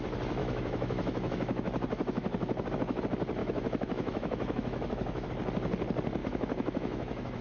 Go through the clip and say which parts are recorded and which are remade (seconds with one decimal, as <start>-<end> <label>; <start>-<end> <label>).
0.0-0.4 recorded; 0.4-3.0 remade; 3.0-3.4 recorded; 3.4-5.3 remade; 5.3-6.2 recorded; 6.2-7.4 remade